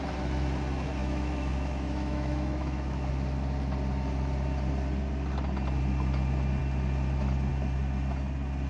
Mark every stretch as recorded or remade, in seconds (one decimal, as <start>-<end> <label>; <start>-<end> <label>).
0.0-1.0 recorded; 1.0-3.1 remade; 3.1-8.7 recorded